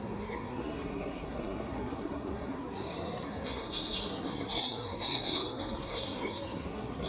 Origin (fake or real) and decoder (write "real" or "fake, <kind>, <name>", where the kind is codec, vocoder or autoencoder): fake, codec, SNAC